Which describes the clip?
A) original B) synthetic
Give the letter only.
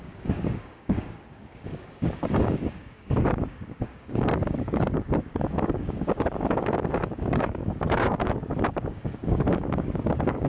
B